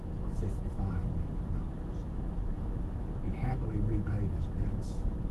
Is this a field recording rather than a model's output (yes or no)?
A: no